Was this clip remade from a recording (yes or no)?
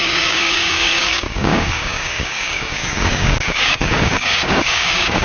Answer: yes